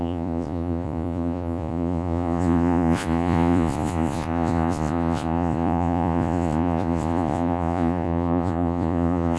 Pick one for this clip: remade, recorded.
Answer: remade